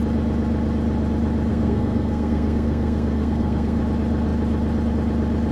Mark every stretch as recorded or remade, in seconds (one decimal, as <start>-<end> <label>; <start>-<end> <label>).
0.0-1.5 recorded; 1.5-3.8 remade; 3.8-5.5 recorded